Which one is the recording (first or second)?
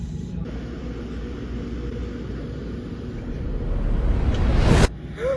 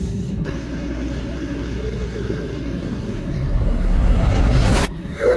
first